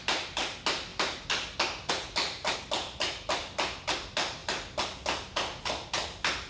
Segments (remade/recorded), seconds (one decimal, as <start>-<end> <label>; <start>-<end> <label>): 0.0-6.5 recorded